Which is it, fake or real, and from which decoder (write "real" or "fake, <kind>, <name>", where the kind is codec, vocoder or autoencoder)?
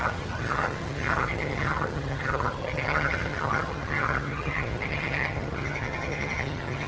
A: fake, vocoder, HiFi-GAN